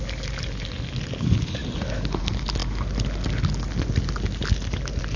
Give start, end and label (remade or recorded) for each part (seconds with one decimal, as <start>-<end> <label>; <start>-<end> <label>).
0.0-5.2 recorded

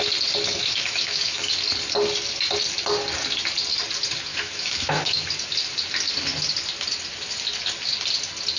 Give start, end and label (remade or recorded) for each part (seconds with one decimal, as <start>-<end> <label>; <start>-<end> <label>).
0.0-0.6 recorded; 0.6-1.5 remade; 1.5-4.3 recorded; 4.3-5.3 remade; 5.3-8.6 recorded

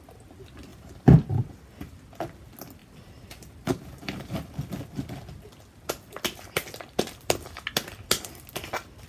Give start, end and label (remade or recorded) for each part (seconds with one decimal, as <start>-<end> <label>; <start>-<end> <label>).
0.0-0.7 recorded; 0.7-1.4 remade; 1.4-2.8 recorded; 2.8-4.6 remade; 4.6-9.1 recorded

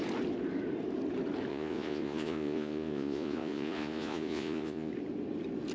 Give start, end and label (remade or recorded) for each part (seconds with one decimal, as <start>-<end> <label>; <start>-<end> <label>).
0.0-1.5 recorded; 1.5-4.9 remade; 4.9-5.7 recorded

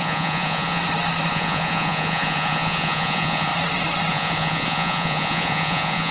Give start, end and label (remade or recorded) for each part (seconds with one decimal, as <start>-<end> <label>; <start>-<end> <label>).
0.0-0.8 remade; 0.8-1.3 recorded; 1.3-3.5 remade; 3.5-4.1 recorded; 4.1-6.1 remade

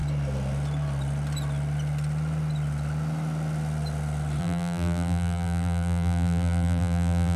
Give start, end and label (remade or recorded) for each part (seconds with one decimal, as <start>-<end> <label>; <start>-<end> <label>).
0.0-4.4 recorded; 4.4-7.4 remade